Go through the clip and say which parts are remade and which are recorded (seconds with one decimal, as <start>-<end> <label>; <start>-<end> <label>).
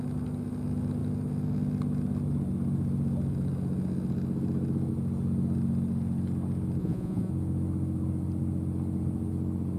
0.0-6.8 recorded; 6.8-7.3 remade; 7.3-9.8 recorded